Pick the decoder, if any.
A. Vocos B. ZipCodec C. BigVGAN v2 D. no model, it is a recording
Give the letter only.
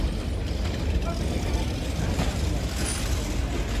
D